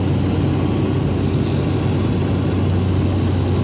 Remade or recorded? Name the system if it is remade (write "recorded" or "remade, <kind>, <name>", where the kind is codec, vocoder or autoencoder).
recorded